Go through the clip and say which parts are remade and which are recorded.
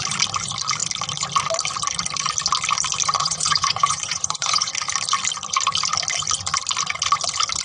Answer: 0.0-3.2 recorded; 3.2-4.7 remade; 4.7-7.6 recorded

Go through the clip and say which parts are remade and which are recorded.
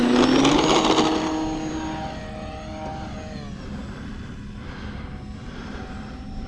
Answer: 0.0-5.4 recorded; 5.4-6.5 remade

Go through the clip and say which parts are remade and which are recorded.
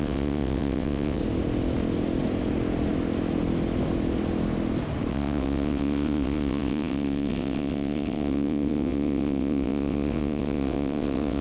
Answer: 0.0-1.2 remade; 1.2-5.1 recorded; 5.1-11.4 remade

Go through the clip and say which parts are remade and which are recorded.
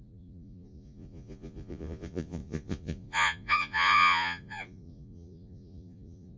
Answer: 0.0-6.4 remade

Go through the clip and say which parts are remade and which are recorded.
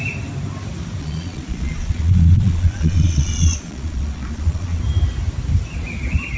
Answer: 0.0-1.0 recorded; 1.0-4.8 remade; 4.8-6.4 recorded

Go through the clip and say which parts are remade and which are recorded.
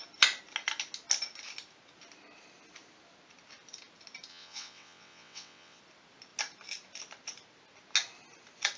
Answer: 0.0-4.3 recorded; 4.3-5.8 remade; 5.8-8.8 recorded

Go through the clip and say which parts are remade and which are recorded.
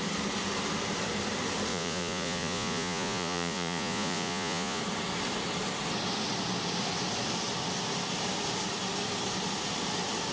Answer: 0.0-1.7 recorded; 1.7-4.8 remade; 4.8-10.3 recorded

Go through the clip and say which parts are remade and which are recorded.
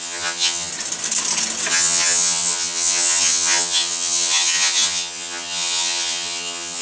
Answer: 0.0-0.7 remade; 0.7-1.7 recorded; 1.7-6.8 remade